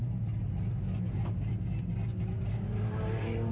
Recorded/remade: recorded